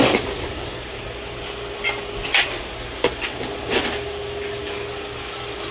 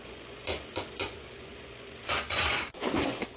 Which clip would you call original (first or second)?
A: first